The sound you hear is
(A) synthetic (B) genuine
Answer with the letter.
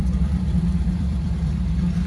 A